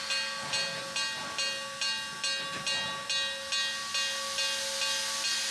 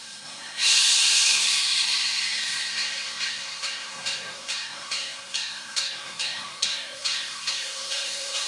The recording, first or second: first